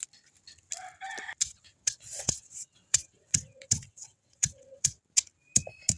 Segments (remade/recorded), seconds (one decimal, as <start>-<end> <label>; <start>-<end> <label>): 0.0-1.4 recorded; 1.4-5.0 remade; 5.0-6.0 recorded